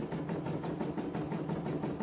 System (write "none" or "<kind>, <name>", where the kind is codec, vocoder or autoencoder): vocoder, BigVGAN v2